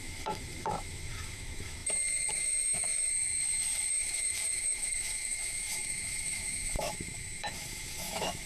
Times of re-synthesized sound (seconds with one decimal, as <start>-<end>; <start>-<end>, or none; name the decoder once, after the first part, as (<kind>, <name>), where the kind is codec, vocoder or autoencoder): 0.0-3.1 (autoencoder, DAC-VAE); 3.9-8.5